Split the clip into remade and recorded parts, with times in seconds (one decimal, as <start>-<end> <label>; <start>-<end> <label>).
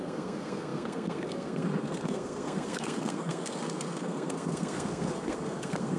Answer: 0.0-6.0 remade